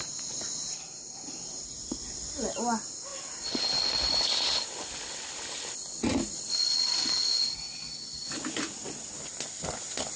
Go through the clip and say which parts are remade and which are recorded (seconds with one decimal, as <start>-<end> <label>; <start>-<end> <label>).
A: 0.0-3.1 recorded; 3.1-3.6 remade; 3.6-10.2 recorded